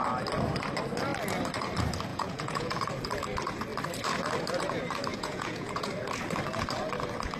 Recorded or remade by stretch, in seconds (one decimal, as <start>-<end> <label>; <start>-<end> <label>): 0.0-2.1 recorded; 2.1-2.8 remade; 2.8-5.1 recorded; 5.1-5.9 remade; 5.9-7.4 recorded